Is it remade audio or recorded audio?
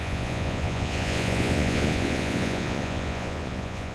remade